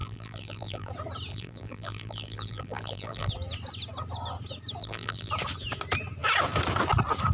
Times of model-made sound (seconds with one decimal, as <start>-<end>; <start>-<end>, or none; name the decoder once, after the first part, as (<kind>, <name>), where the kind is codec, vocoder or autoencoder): 0.0-0.9 (vocoder, BigVGAN v2); 1.3-3.3; 4.8-5.3